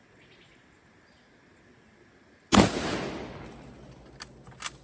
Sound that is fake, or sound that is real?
real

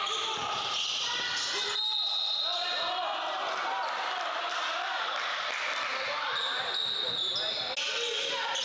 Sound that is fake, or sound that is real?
real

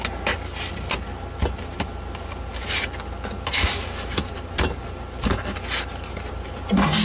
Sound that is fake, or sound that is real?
real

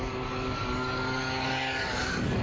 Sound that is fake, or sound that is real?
fake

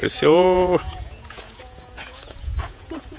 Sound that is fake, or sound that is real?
fake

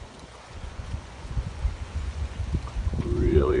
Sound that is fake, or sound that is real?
fake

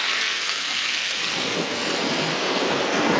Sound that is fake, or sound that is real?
fake